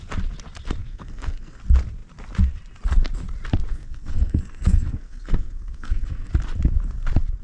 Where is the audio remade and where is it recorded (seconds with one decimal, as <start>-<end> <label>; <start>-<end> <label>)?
0.0-0.8 recorded; 0.8-1.6 remade; 1.6-3.7 recorded; 3.7-6.3 remade; 6.3-7.4 recorded